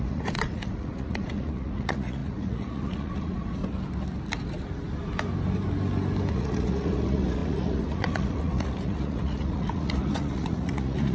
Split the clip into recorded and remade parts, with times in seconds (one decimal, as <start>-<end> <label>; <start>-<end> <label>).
0.0-3.6 remade; 3.6-6.3 recorded; 6.3-11.1 remade